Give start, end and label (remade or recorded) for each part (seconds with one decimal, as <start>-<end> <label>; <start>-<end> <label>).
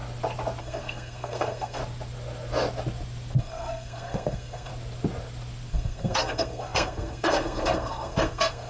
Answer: 0.0-0.6 recorded; 0.6-1.8 remade; 1.8-3.4 recorded; 3.4-4.7 remade; 4.7-5.7 recorded; 5.7-8.7 remade